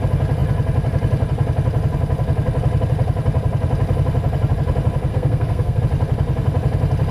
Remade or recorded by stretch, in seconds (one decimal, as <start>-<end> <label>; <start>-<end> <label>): 0.0-5.1 recorded; 5.1-5.8 remade; 5.8-7.1 recorded